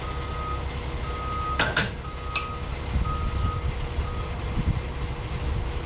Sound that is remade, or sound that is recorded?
recorded